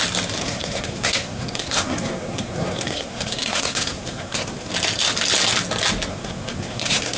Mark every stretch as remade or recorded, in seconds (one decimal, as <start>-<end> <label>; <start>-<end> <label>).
0.0-0.4 recorded; 0.4-4.7 remade; 4.7-6.1 recorded; 6.1-7.2 remade